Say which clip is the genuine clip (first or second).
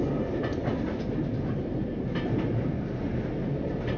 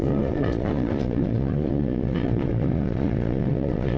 first